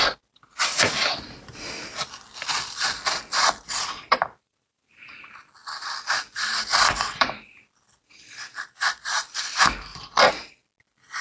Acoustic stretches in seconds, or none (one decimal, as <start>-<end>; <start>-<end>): 9.9-11.2